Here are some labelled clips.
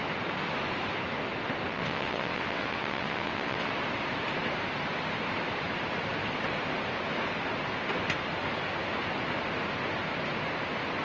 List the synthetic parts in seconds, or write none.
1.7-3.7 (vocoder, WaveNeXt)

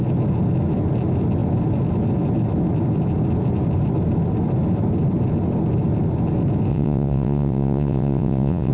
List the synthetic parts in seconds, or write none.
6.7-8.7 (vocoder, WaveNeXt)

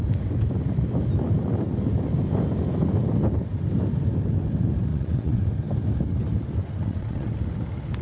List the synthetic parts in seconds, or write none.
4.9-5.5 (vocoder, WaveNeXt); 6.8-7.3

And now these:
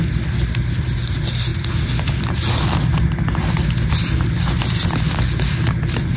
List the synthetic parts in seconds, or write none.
none

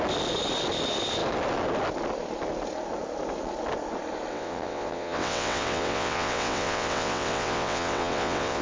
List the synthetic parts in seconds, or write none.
4.3-8.6 (vocoder, WaveNeXt)

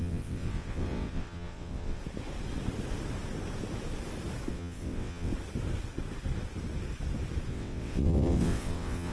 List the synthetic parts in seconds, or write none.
0.0-2.0 (vocoder, WaveNeXt); 4.5-5.3; 7.5-9.1

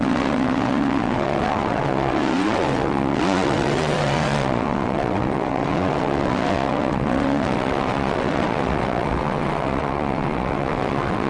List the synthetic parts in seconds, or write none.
0.0-11.3 (vocoder, WaveNeXt)

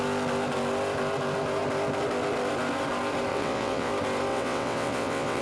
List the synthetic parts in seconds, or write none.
3.3-3.9 (vocoder, WaveNeXt); 4.3-5.4